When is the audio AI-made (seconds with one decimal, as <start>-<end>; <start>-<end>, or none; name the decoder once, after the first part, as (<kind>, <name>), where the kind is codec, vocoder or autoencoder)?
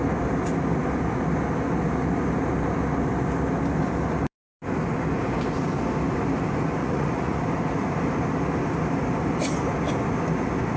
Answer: 6.8-7.4 (vocoder, Vocos)